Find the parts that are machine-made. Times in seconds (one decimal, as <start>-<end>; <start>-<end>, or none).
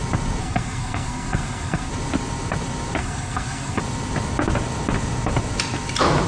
0.4-1.9; 3.0-3.8